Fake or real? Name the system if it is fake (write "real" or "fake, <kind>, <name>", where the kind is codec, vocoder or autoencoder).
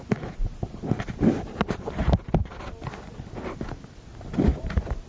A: real